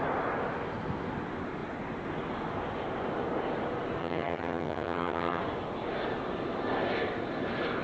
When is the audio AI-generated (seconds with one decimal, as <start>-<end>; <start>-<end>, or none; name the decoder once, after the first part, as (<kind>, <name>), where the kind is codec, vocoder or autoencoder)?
4.0-5.4 (vocoder, HiFi-GAN)